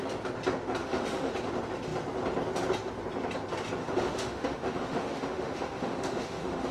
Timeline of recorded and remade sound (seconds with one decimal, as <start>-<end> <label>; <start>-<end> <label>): 0.0-0.8 recorded; 0.8-1.3 remade; 1.3-3.8 recorded; 3.8-6.7 remade